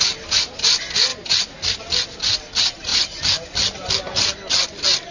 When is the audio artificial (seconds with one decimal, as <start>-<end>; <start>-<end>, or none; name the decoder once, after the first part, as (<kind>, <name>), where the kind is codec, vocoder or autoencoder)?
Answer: none